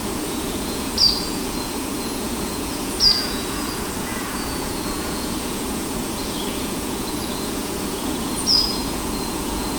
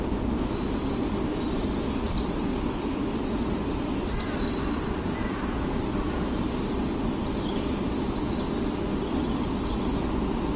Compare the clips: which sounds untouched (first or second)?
second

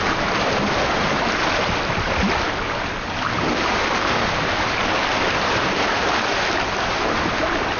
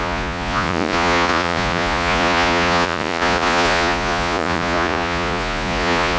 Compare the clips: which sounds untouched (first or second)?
first